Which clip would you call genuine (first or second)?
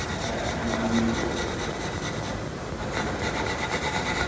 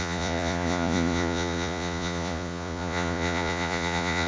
first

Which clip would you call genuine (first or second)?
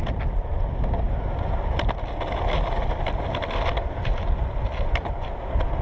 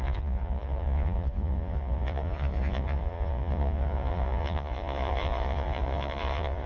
first